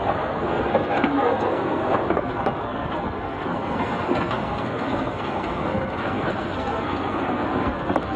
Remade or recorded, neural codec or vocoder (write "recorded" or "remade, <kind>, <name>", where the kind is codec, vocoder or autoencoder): remade, codec, SNAC